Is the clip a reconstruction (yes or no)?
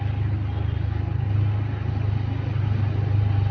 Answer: no